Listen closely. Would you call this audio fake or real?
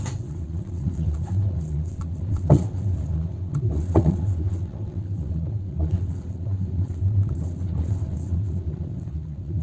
fake